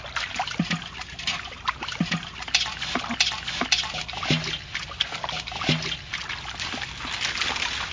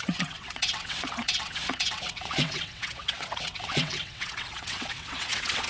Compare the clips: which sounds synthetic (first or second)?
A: second